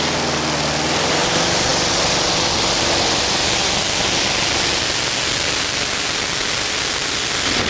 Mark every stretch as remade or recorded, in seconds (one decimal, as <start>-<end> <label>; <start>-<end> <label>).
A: 0.0-7.7 recorded